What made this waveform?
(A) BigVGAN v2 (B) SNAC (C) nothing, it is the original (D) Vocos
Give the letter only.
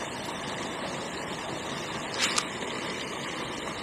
C